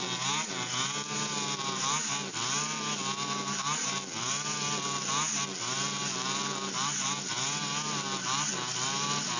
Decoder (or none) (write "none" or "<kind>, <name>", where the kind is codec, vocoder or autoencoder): none